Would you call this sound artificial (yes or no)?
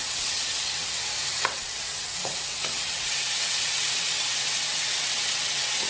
yes